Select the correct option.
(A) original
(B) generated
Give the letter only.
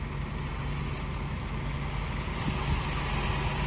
A